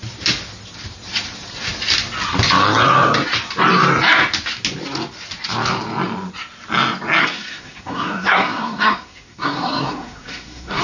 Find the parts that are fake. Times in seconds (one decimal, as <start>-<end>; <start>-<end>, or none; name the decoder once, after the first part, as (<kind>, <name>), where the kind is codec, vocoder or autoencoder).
7.2-10.8 (codec, SNAC)